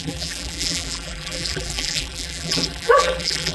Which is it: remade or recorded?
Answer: remade